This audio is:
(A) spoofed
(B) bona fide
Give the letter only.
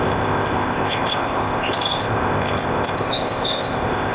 A